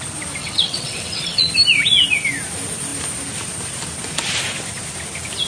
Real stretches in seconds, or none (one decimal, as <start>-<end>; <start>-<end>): 0.0-0.4; 1.5-5.5

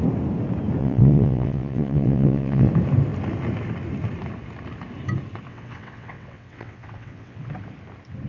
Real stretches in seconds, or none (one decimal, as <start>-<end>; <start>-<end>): 0.0-0.8; 2.7-5.5; 7.5-8.3

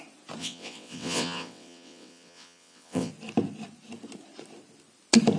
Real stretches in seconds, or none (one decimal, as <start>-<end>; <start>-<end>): 0.0-0.4; 3.1-5.4

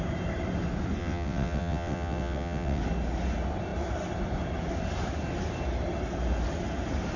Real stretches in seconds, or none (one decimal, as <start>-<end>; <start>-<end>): 0.0-1.0; 2.8-7.2

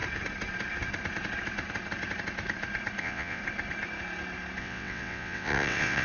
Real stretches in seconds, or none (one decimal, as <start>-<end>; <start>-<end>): 0.0-3.0; 3.4-4.6